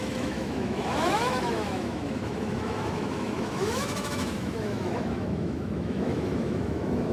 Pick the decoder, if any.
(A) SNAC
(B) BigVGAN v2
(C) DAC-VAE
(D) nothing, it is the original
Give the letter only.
C